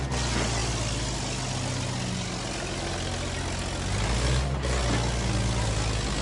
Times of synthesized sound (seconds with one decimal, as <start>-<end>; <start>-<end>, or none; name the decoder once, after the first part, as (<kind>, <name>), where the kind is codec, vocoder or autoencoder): none